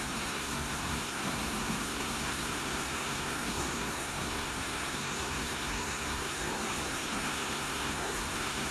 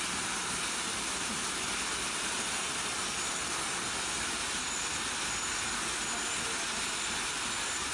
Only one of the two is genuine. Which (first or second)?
second